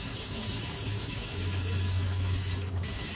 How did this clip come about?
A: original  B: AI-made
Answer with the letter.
B